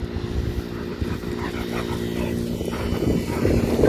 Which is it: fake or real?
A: real